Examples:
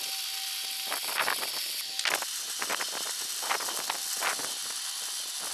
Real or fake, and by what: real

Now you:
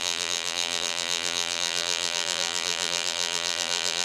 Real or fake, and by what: fake, vocoder, BigVGAN v2